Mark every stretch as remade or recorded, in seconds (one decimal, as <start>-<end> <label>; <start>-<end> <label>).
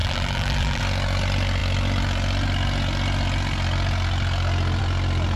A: 0.0-0.8 remade; 0.8-5.4 recorded